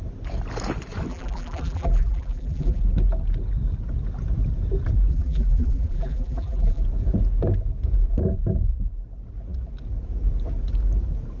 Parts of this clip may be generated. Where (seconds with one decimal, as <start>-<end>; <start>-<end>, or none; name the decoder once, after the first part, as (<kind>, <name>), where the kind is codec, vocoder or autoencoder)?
1.1-2.8 (vocoder, BigVGAN v2); 5.1-6.8